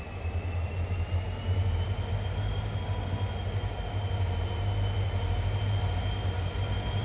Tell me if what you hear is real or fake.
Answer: real